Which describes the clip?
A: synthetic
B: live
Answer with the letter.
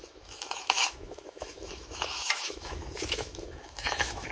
A